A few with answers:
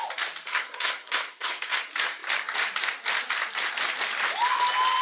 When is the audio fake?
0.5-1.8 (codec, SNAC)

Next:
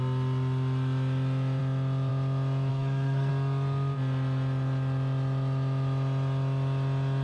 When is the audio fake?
2.7-3.3 (codec, SNAC)

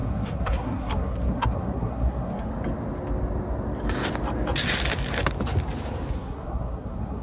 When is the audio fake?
0.0-2.5 (codec, SNAC); 6.1-7.2

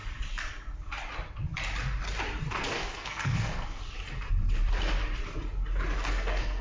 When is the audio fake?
2.5-3.8 (codec, SNAC); 6.1-6.6